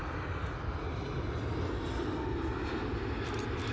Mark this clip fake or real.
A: real